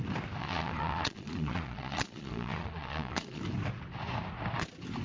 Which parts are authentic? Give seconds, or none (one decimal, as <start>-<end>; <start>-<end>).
0.0-0.4; 3.4-5.0